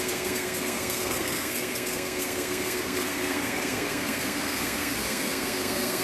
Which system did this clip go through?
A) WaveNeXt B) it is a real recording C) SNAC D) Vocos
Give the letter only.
C